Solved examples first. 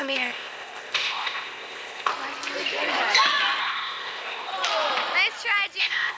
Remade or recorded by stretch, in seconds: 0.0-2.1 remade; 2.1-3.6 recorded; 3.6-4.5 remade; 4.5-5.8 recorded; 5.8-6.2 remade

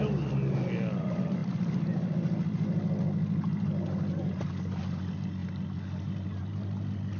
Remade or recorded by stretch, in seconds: 0.0-7.2 recorded

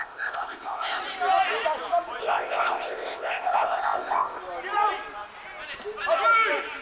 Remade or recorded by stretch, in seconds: 0.0-1.0 remade; 1.0-2.2 recorded; 2.2-4.4 remade; 4.4-6.8 recorded

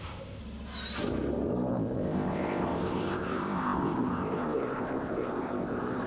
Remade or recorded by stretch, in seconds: 0.0-0.4 remade; 0.4-1.7 recorded; 1.7-6.1 remade

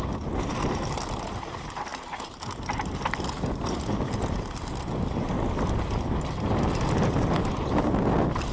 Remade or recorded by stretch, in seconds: 0.0-8.5 recorded